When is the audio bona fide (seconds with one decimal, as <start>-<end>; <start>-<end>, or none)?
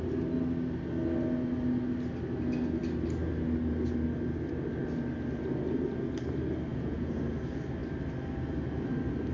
0.0-6.7; 7.2-9.3